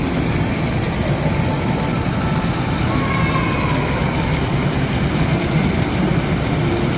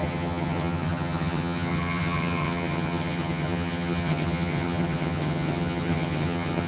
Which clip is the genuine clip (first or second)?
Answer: first